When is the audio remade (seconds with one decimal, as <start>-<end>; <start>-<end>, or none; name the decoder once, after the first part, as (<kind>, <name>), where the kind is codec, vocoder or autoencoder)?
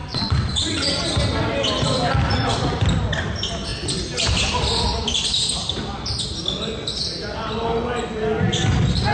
0.0-1.0 (vocoder, WaveNeXt)